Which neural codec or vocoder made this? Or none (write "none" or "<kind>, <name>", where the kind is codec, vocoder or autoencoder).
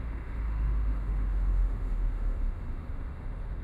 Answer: autoencoder, DAC-VAE